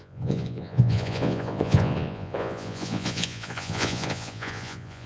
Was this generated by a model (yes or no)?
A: yes